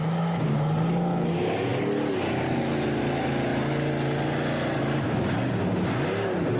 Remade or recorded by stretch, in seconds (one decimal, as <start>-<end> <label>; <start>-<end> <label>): 0.0-0.6 remade; 0.6-6.6 recorded